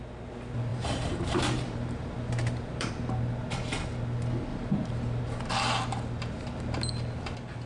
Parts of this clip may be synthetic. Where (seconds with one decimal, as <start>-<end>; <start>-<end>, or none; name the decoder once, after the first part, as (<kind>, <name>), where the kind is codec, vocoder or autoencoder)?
0.7-2.9 (vocoder, BigVGAN v2); 4.5-5.2